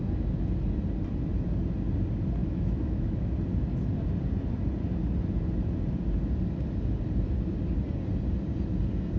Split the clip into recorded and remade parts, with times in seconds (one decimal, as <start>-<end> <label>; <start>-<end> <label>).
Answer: 0.0-2.4 recorded; 2.4-3.3 remade; 3.3-9.2 recorded